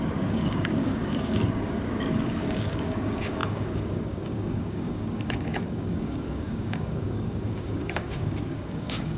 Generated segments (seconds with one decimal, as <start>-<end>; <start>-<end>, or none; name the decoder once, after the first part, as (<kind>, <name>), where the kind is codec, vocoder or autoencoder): 0.0-9.2 (codec, DAC)